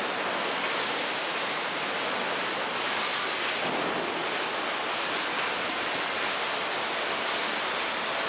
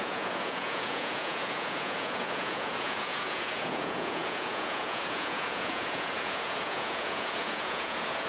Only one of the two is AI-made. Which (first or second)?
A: second